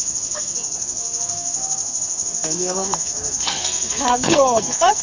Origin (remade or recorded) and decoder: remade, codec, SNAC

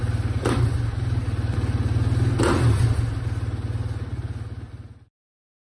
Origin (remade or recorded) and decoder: recorded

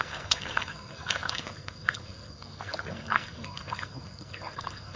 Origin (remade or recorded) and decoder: remade, codec, SNAC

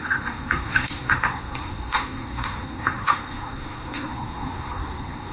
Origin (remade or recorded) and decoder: remade, codec, SNAC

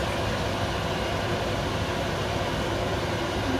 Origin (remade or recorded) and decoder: recorded